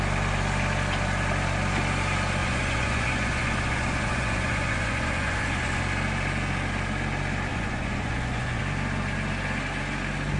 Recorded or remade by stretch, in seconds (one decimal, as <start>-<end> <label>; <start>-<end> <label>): 0.0-2.4 recorded; 2.4-5.8 remade; 5.8-7.5 recorded; 7.5-8.6 remade; 8.6-10.4 recorded